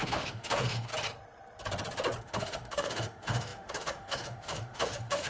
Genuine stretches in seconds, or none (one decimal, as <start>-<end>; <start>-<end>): 0.9-2.2